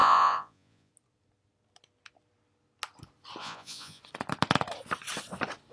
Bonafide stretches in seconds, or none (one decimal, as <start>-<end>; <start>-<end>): 0.9-3.4; 4.0-5.7

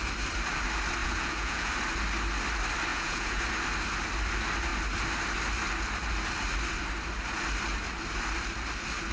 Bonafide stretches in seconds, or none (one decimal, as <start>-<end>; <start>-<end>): 0.0-1.0; 1.7-2.9; 3.4-9.1

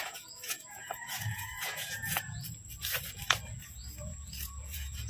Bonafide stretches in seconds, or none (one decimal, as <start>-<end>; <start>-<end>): 2.4-3.5

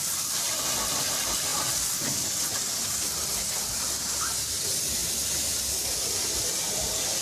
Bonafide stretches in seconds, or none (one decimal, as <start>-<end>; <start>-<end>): 0.0-7.2

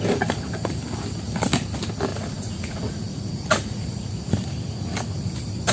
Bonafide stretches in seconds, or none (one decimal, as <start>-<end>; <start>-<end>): 0.0-2.1; 4.2-5.7

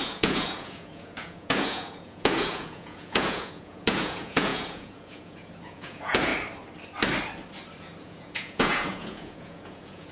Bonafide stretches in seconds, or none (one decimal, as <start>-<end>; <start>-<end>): 6.3-8.0

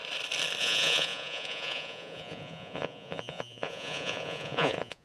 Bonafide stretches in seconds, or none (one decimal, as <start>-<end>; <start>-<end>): 0.0-0.6